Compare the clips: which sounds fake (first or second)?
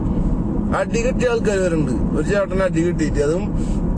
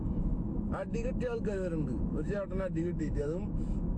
second